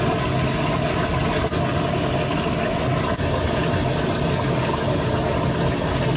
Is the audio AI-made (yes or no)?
no